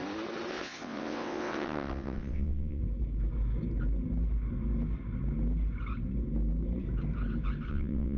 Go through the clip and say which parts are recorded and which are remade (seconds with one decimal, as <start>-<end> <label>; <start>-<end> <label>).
0.0-0.5 recorded; 0.5-2.8 remade; 2.8-7.7 recorded; 7.7-8.2 remade